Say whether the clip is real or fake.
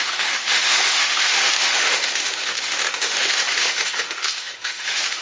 fake